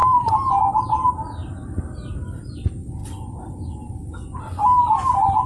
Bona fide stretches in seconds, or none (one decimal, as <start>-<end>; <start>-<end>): 0.0-5.5